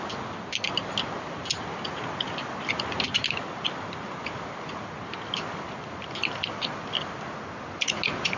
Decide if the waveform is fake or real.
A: real